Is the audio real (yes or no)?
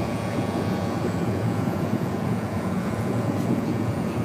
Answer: no